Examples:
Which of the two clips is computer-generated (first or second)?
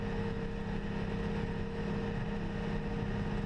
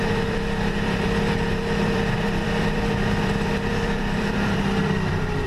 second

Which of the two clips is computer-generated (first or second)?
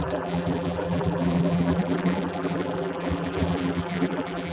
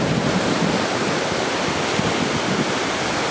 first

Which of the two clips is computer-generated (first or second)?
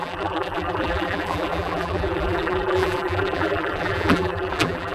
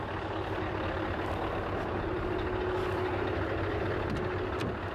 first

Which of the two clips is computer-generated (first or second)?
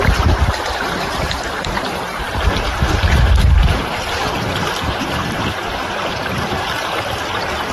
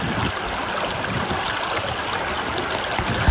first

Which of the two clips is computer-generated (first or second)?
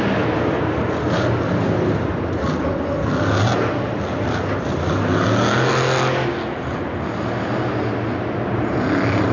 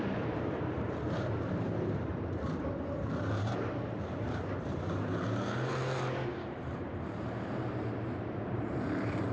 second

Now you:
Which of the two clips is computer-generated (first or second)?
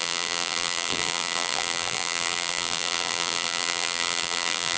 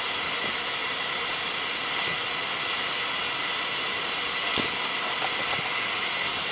first